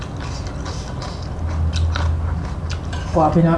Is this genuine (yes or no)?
yes